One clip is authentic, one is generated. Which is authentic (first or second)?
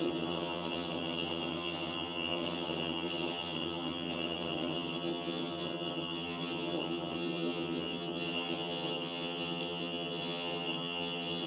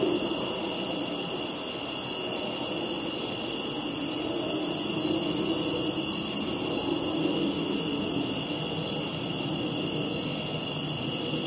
second